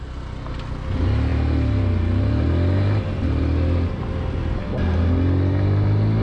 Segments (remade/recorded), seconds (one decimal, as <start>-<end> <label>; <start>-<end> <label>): 0.0-6.2 recorded